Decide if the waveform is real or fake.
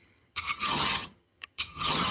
fake